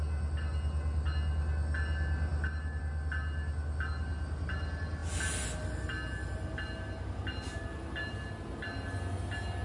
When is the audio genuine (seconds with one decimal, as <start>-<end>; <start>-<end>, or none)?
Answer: 0.0-9.6